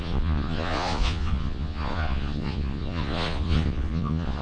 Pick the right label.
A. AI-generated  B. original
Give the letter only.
A